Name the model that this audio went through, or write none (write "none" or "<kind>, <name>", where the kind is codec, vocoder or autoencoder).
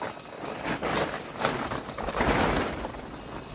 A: none